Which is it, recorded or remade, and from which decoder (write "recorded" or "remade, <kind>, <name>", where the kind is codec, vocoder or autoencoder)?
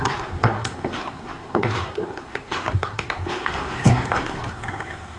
remade, codec, SNAC